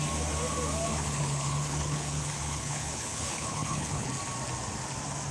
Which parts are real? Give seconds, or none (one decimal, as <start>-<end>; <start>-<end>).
0.0-0.9; 4.1-5.3